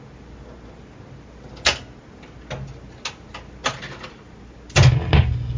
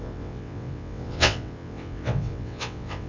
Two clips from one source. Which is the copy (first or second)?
second